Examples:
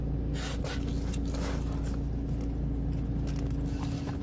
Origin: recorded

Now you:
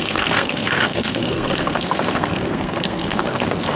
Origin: remade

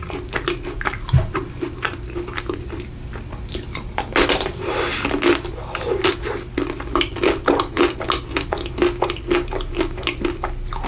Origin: recorded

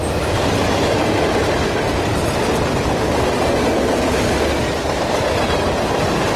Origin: recorded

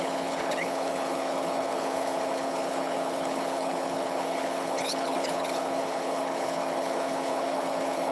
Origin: remade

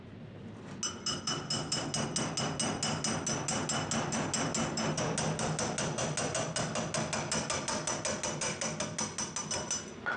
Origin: recorded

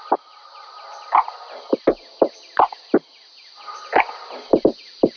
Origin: recorded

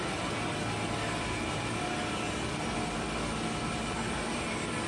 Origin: recorded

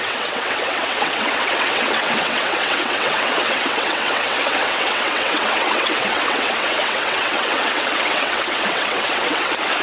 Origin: remade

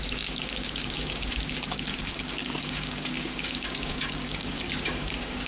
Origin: remade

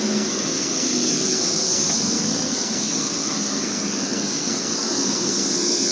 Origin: remade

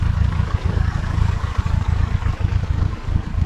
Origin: remade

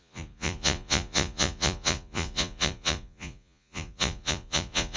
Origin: remade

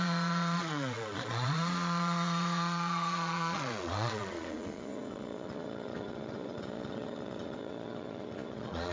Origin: remade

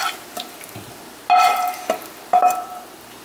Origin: recorded